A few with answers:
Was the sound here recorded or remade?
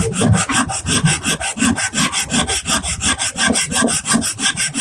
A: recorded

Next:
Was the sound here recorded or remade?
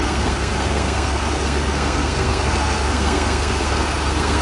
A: remade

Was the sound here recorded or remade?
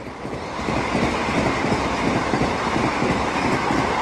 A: recorded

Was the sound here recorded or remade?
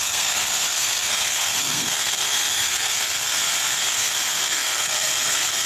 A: remade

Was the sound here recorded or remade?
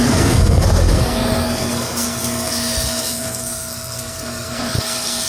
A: remade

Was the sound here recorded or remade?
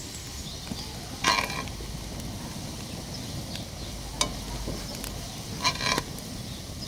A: recorded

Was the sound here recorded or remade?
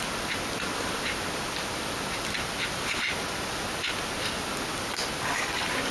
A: recorded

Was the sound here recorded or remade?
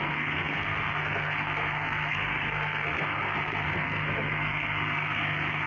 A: remade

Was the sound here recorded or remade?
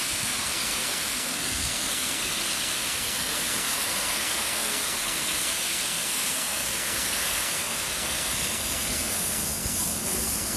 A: remade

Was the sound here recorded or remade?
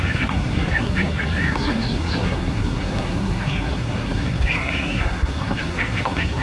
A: remade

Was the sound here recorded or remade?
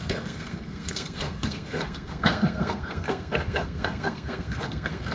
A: remade